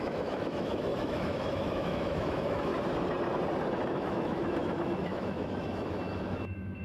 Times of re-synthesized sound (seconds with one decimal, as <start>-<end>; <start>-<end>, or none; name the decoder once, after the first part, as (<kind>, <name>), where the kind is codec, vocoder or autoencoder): 0.0-2.7 (autoencoder, DAC-VAE); 3.9-6.8